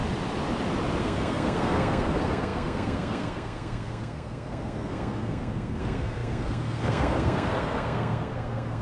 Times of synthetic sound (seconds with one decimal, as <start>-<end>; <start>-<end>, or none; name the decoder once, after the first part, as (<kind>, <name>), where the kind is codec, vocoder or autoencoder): 1.0-8.8 (codec, SNAC)